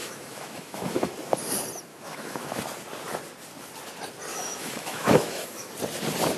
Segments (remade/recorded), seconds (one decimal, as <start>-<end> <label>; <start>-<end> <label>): 0.0-1.1 remade; 1.1-1.9 recorded; 1.9-2.6 remade; 2.6-4.3 recorded; 4.3-5.7 remade; 5.7-6.4 recorded